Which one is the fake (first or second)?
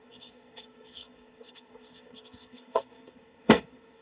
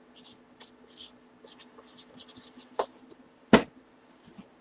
first